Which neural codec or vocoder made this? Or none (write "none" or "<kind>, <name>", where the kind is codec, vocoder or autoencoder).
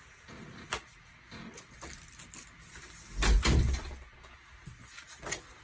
none